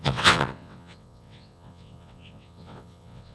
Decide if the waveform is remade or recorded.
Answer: remade